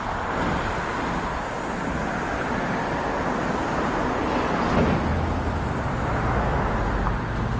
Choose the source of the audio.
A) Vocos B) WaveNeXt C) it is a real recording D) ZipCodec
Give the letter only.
C